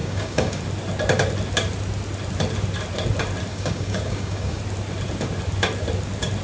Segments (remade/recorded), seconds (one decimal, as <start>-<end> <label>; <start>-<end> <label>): 0.0-0.6 remade; 0.6-3.5 recorded; 3.5-4.6 remade; 4.6-6.4 recorded